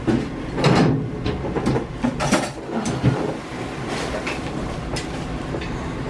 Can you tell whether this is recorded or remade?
recorded